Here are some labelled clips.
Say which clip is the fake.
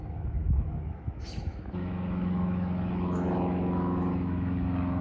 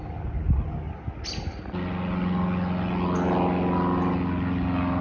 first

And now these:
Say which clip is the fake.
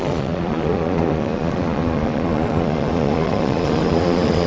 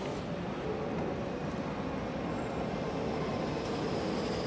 first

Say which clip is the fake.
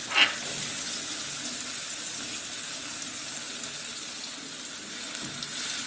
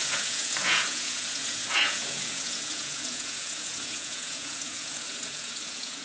second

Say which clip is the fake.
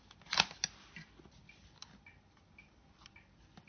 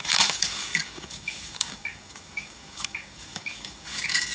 second